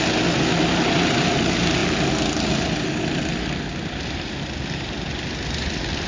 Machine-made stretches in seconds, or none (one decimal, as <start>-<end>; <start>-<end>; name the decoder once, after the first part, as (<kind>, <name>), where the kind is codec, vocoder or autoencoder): none